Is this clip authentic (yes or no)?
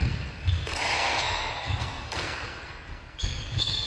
no